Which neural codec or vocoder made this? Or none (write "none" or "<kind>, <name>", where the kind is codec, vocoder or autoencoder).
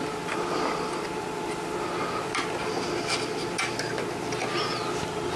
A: none